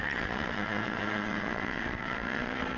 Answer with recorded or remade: remade